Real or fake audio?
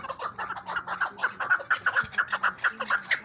real